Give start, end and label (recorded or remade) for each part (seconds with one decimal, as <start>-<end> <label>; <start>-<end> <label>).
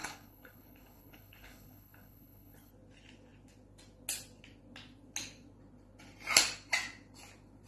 0.0-2.7 remade; 2.7-7.7 recorded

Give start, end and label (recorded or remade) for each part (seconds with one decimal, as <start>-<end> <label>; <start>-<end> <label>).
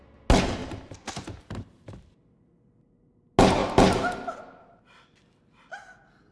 0.0-0.6 recorded; 0.6-2.2 remade; 2.2-6.3 recorded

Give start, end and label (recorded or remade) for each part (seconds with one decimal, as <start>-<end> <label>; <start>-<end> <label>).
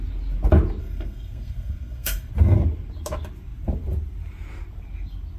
0.0-0.8 recorded; 0.8-2.3 remade; 2.3-5.4 recorded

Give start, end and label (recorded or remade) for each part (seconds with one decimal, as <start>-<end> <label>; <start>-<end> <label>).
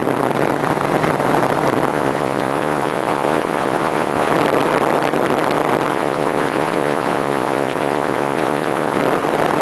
0.0-1.9 recorded; 1.9-4.3 remade; 4.3-5.9 recorded; 5.9-9.0 remade; 9.0-9.6 recorded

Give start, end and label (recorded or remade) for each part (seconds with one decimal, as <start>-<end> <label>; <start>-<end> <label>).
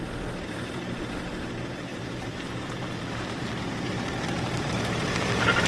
0.0-1.9 recorded; 1.9-5.3 remade; 5.3-5.7 recorded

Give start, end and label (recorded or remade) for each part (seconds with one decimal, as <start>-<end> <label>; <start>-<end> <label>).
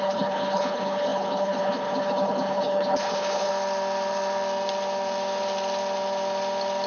0.0-3.5 remade; 3.5-6.9 recorded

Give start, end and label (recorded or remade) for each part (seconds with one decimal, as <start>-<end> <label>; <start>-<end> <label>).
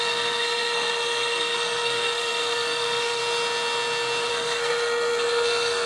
0.0-3.2 remade; 3.2-4.3 recorded; 4.3-5.9 remade